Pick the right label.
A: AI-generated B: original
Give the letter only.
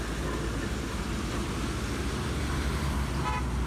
B